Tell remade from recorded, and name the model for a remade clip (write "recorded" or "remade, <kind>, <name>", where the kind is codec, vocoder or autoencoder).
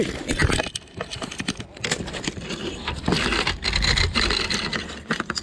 recorded